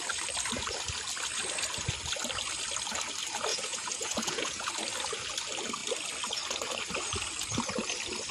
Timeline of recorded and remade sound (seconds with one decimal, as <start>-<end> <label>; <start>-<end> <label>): 0.0-3.5 recorded; 3.5-4.7 remade; 4.7-8.3 recorded